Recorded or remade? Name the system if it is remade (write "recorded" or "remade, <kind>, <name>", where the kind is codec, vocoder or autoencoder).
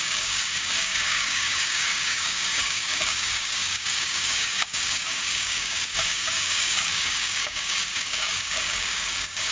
remade, codec, DAC